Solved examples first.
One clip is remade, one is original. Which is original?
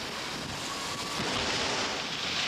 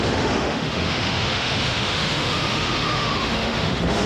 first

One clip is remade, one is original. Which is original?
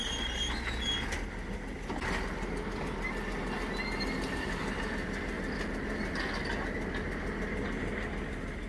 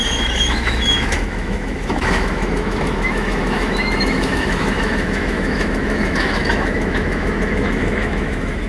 first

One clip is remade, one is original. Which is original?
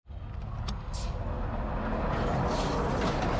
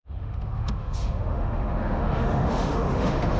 first